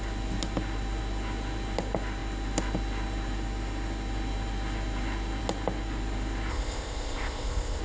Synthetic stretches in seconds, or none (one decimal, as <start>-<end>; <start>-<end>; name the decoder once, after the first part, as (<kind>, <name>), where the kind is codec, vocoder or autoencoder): 6.5-7.8 (codec, ZipCodec)